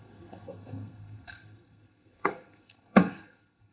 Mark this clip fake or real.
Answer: fake